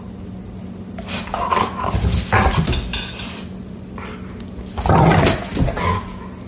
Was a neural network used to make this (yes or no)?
no